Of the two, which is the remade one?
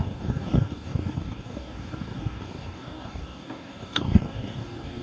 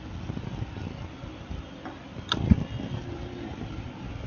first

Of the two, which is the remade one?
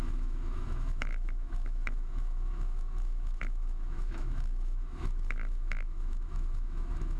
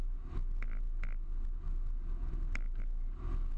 first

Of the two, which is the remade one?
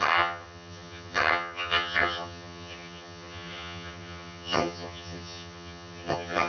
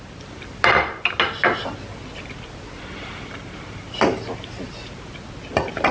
first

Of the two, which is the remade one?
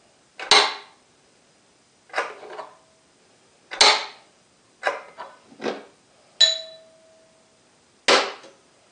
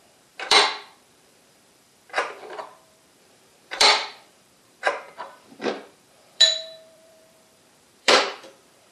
second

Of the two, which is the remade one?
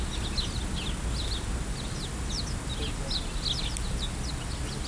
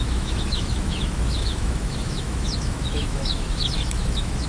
second